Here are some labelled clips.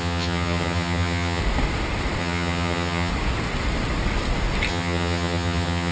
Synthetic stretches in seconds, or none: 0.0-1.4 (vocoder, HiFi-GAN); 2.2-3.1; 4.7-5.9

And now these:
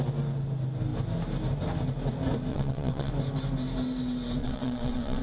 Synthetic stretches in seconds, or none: 2.5-3.1 (vocoder, WaveNeXt); 4.4-5.2